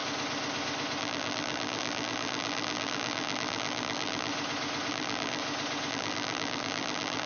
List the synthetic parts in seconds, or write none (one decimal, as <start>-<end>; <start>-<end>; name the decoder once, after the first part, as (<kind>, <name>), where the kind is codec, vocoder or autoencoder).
1.0-4.3 (vocoder, BigVGAN v2); 4.9-5.4; 5.9-7.3